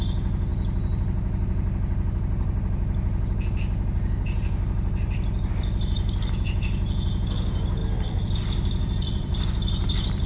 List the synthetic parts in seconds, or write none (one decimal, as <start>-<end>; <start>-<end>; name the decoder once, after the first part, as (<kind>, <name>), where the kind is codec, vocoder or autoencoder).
7.8-10.3 (vocoder, BigVGAN v2)

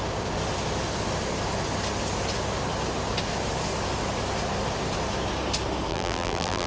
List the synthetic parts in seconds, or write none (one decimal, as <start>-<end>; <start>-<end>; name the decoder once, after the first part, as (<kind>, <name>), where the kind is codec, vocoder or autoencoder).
5.9-6.7 (vocoder, BigVGAN v2)